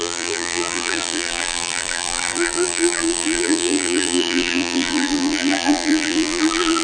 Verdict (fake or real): fake